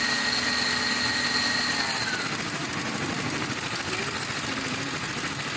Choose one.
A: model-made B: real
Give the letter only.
B